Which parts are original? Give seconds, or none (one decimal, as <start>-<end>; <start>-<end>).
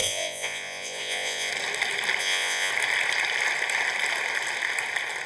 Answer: 1.5-2.2; 2.7-5.3